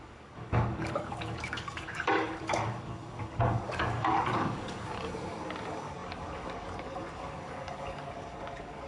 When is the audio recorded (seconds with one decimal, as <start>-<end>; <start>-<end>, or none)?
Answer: none